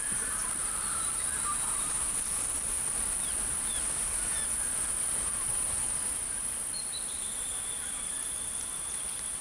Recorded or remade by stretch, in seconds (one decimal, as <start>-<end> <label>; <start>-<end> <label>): 0.0-4.3 remade; 4.3-5.8 recorded; 5.8-9.4 remade